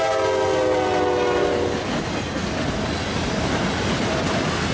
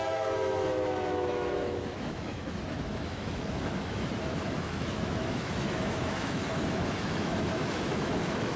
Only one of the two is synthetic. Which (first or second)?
second